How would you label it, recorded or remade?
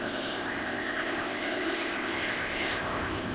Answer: remade